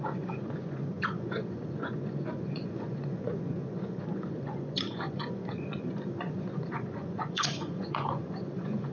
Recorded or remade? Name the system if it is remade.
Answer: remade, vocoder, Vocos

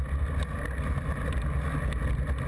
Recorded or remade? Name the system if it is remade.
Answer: recorded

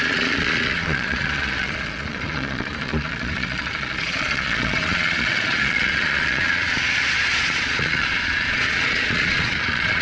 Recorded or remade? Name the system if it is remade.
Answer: remade, vocoder, Vocos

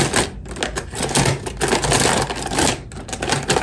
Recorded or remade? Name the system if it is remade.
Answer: recorded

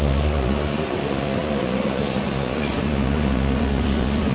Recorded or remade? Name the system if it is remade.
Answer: remade, vocoder, Vocos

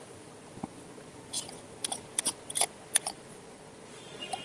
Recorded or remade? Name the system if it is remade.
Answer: remade, vocoder, Vocos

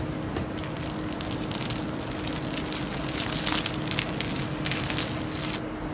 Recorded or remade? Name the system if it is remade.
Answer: recorded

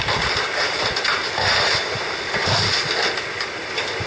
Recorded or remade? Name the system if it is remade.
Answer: recorded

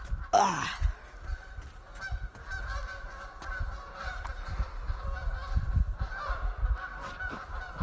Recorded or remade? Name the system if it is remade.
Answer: recorded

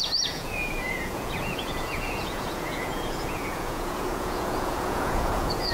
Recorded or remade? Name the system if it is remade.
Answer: remade, vocoder, Vocos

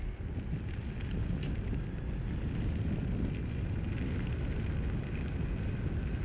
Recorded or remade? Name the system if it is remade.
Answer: recorded